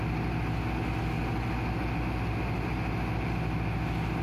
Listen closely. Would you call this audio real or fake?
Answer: real